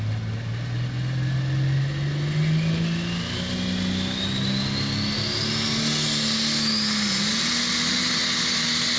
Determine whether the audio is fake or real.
real